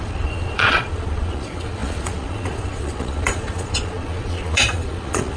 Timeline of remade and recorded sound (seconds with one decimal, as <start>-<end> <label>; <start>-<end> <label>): 0.0-5.4 remade